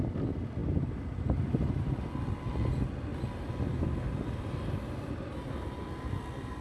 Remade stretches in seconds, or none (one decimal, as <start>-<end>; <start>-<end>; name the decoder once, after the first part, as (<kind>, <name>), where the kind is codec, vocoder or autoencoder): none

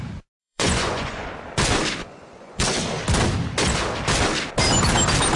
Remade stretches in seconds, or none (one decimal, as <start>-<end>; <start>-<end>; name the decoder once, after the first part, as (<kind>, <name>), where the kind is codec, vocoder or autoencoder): 0.4-1.3 (vocoder, Vocos); 2.0-2.6

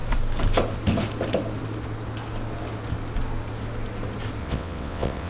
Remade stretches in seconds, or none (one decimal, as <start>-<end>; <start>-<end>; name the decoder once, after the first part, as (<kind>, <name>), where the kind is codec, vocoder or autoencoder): 4.4-5.3 (vocoder, WaveNeXt)